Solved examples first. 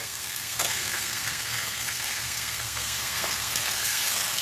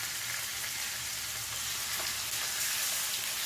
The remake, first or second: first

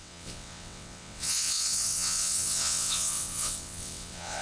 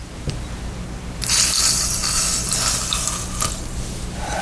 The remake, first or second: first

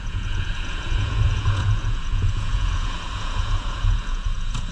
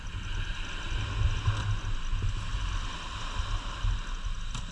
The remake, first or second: first